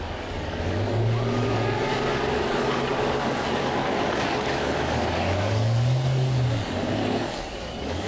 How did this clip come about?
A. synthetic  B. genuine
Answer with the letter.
A